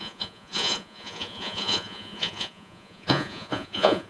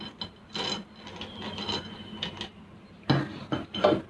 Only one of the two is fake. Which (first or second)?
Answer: first